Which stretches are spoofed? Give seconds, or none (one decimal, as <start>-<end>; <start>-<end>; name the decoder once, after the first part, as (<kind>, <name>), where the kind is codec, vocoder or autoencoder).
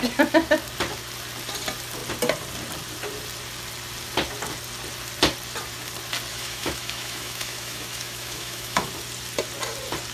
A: 6.3-8.9 (autoencoder, DAC-VAE)